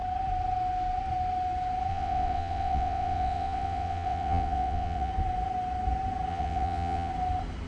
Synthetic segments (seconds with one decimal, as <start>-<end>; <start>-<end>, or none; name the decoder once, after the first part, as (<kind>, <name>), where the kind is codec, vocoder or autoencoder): 1.9-5.1 (vocoder, WaveNeXt); 6.3-7.1